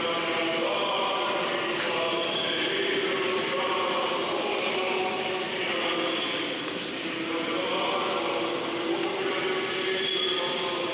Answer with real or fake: real